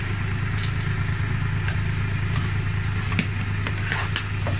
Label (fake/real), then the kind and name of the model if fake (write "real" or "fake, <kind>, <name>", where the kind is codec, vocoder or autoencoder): real